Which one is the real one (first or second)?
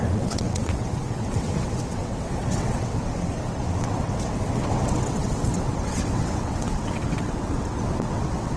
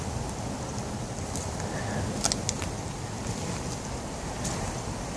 second